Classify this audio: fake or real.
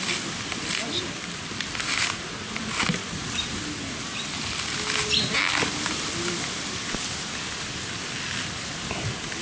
real